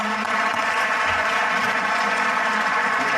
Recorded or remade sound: remade